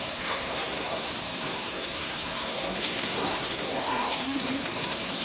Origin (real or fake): fake